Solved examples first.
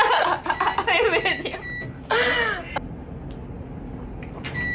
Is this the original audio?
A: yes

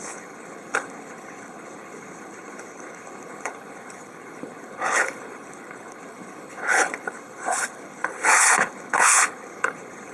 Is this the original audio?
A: no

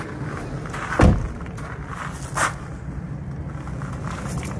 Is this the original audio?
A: yes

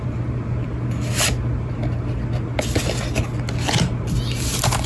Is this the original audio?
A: yes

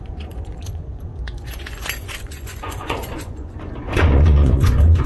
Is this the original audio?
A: no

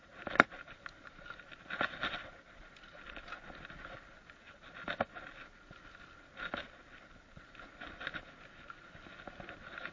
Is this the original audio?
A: yes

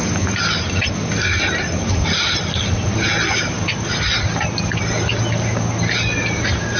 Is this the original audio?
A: yes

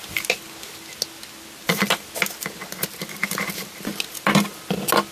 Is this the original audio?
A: yes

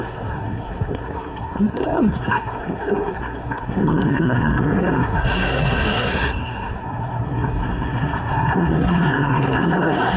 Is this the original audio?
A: no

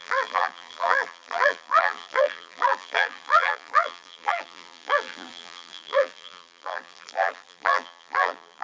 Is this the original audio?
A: no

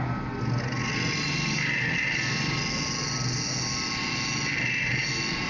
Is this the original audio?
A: yes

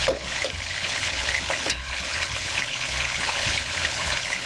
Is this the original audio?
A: no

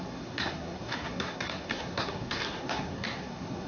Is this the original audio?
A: no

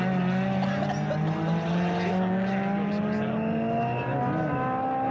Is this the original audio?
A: yes